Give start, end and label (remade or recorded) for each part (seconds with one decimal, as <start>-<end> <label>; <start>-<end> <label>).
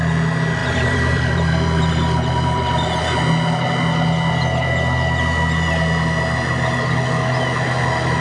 0.0-0.6 recorded; 0.6-2.9 remade; 2.9-8.2 recorded